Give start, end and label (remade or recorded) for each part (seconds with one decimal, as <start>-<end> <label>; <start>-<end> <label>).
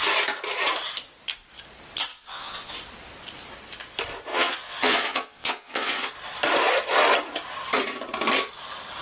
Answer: 0.0-2.1 recorded; 2.1-2.7 remade; 2.7-4.3 recorded; 4.3-6.1 remade; 6.1-9.0 recorded